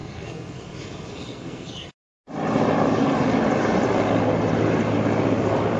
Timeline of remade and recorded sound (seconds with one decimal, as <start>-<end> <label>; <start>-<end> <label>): 0.0-1.9 remade; 1.9-5.8 recorded